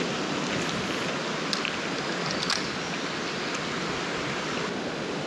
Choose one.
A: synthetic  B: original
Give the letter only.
B